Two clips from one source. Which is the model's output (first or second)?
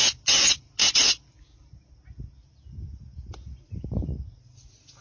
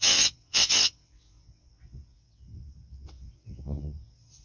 second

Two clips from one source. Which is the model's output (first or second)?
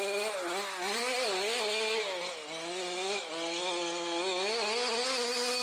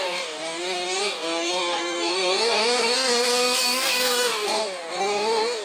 second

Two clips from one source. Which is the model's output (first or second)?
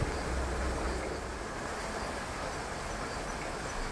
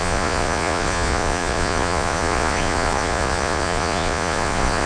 second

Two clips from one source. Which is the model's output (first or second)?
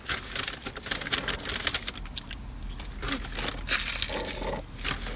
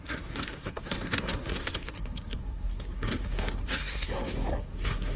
second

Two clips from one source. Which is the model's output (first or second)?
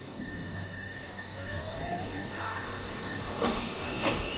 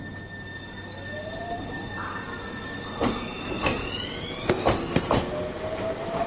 first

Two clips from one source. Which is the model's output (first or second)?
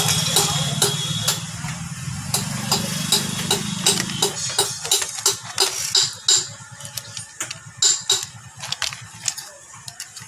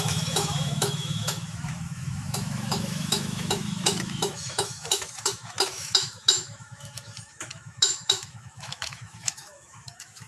second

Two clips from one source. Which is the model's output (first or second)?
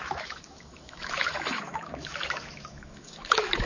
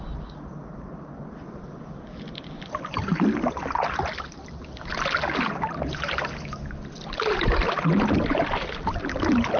first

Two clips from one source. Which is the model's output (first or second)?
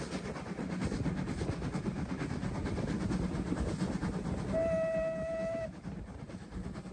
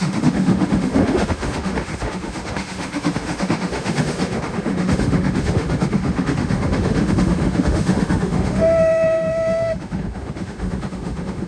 second